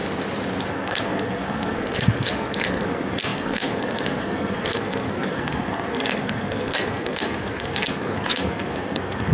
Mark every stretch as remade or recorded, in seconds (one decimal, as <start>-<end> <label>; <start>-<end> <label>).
0.0-0.7 recorded; 0.7-9.3 remade